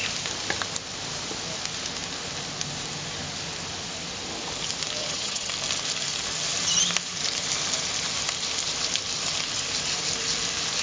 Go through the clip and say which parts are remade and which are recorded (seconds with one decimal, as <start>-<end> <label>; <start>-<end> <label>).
0.0-5.0 recorded; 5.0-5.5 remade; 5.5-10.8 recorded